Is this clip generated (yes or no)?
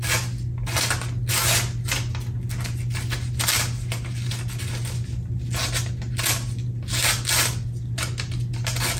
no